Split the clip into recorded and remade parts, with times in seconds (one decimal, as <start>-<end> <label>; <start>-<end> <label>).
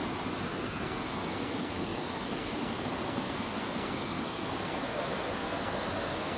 0.0-0.6 recorded; 0.6-6.4 remade